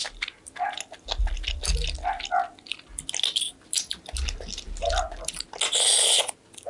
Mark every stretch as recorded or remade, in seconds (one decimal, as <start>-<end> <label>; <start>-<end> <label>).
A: 0.0-6.7 recorded